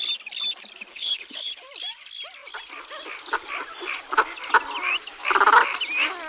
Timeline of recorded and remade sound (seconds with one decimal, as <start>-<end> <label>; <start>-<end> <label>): 0.0-0.9 recorded; 0.9-1.6 remade; 1.6-6.3 recorded

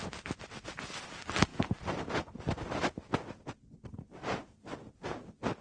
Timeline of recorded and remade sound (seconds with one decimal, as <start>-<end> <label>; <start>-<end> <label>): 0.0-5.6 recorded

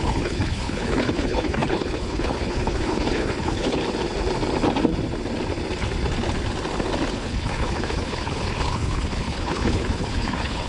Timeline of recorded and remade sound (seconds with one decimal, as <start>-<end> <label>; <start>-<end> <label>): 0.0-3.8 remade; 3.8-7.1 recorded; 7.1-10.7 remade

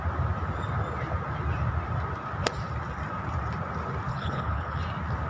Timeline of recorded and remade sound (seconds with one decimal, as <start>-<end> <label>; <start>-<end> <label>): 0.0-4.1 recorded; 4.1-4.8 remade; 4.8-5.3 recorded

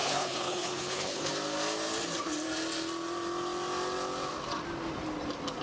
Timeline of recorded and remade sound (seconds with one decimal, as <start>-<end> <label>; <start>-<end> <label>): 0.0-1.3 remade; 1.3-5.6 recorded

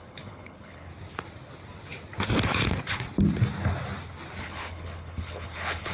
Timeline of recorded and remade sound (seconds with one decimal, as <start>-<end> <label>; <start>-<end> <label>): 0.0-0.9 remade; 0.9-4.4 recorded; 4.4-5.9 remade